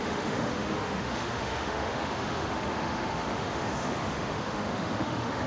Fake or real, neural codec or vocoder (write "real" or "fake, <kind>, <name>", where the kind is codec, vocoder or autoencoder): fake, autoencoder, DAC-VAE